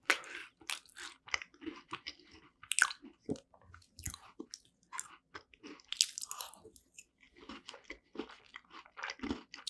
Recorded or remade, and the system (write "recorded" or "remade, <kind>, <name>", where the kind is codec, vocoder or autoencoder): recorded